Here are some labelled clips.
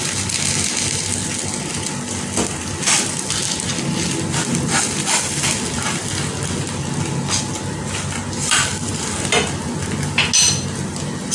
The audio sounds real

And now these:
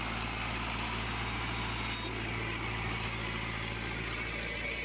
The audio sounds real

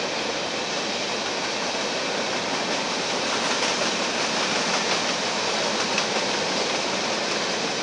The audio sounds real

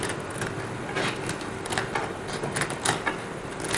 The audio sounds real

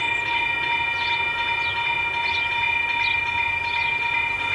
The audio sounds real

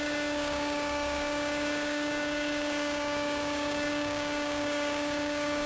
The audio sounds fake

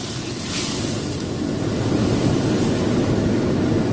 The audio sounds real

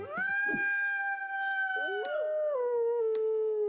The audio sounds real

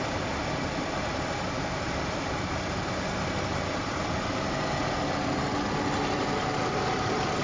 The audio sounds real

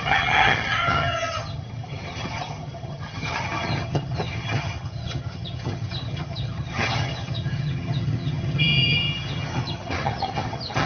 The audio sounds fake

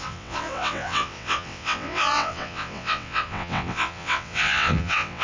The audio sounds fake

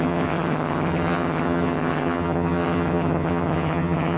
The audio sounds fake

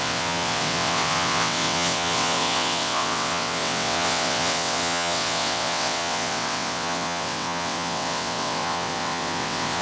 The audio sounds fake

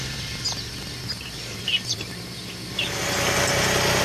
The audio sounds real